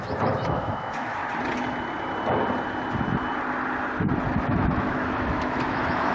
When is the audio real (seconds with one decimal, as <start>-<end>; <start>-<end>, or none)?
1.2-4.4